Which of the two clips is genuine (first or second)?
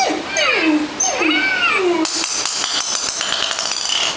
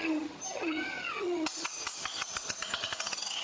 first